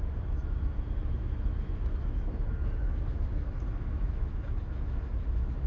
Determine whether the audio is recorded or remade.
remade